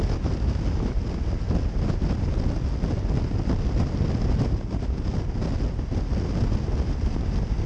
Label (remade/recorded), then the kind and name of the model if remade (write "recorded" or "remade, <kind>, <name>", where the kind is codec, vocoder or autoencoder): recorded